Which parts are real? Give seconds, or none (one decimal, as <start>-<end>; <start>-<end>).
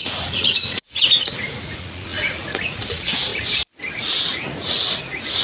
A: 3.3-4.0